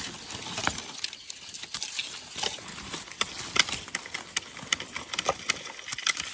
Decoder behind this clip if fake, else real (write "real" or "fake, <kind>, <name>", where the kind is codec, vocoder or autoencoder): real